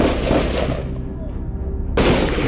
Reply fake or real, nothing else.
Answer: real